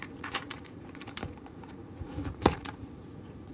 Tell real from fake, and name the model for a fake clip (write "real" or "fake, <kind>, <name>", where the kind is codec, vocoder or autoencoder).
fake, vocoder, Vocos